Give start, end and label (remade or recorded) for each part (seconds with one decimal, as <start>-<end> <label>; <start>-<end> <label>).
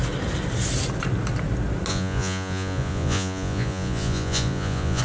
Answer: 0.0-1.9 recorded; 1.9-5.0 remade